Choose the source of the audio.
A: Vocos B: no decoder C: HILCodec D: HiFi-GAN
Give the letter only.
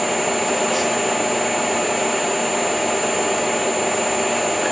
B